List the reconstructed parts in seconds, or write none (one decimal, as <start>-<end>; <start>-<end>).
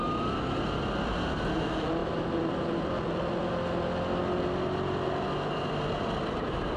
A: none